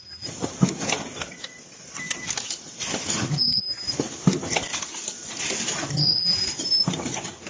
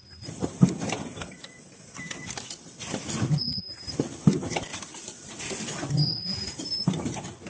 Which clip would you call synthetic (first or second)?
second